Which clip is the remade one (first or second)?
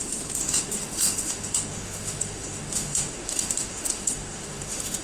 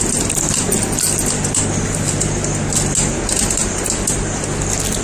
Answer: first